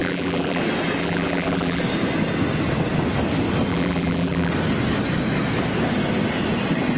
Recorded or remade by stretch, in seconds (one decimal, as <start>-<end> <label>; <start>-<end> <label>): 0.0-0.6 remade; 0.6-1.0 recorded; 1.0-1.8 remade; 1.8-3.7 recorded; 3.7-4.5 remade; 4.5-7.0 recorded